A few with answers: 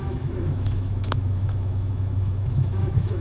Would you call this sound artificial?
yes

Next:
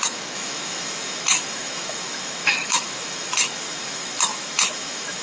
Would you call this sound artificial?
yes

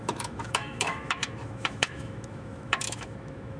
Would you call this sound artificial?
yes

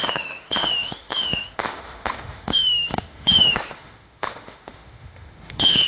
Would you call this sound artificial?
yes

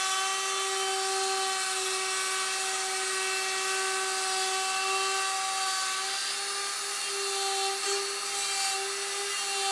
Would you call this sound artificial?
no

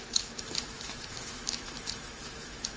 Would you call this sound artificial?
yes